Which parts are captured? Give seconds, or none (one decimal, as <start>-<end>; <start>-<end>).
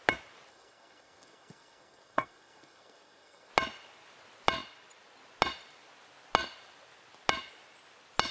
0.0-0.5; 3.5-8.3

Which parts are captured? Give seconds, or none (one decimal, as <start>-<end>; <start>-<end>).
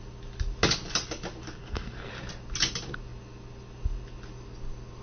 0.0-1.6; 2.1-5.0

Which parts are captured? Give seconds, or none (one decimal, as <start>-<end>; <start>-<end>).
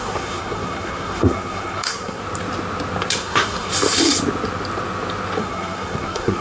2.2-3.1; 3.7-5.4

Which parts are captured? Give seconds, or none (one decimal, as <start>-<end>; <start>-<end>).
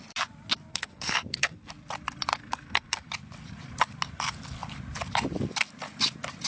0.0-0.7; 1.7-2.3; 3.1-6.5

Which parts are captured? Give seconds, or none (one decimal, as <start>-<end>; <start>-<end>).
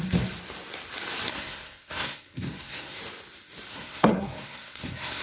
0.0-1.3; 3.0-3.7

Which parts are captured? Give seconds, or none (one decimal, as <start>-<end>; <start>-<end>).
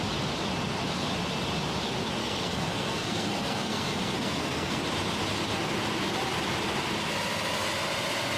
0.0-2.2; 4.8-8.4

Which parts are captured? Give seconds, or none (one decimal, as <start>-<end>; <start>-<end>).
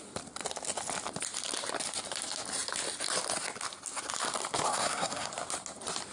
0.0-4.7; 5.3-6.1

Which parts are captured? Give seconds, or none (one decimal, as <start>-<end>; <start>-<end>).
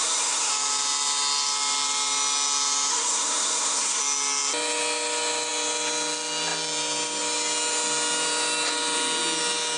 0.5-2.9; 4.0-9.8